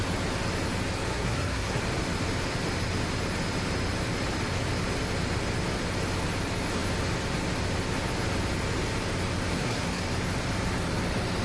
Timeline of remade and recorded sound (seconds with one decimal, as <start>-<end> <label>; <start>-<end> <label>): 0.0-1.1 recorded; 1.1-1.8 remade; 1.8-9.5 recorded; 9.5-10.0 remade; 10.0-11.4 recorded